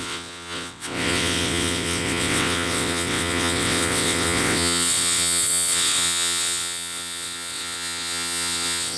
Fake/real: fake